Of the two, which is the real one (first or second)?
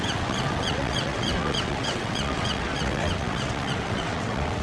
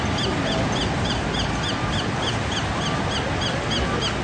second